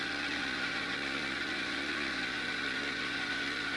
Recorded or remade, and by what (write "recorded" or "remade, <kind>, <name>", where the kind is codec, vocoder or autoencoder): remade, vocoder, Vocos